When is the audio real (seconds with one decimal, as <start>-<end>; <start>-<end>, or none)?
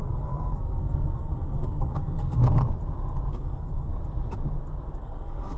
2.4-3.3; 3.9-5.0